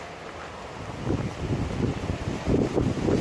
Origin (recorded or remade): recorded